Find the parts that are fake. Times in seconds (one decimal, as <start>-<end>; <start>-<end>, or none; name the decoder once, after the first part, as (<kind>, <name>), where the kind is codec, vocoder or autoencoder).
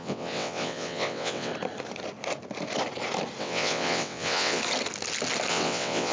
0.0-1.5 (vocoder, WaveNeXt); 3.4-4.6; 5.5-6.1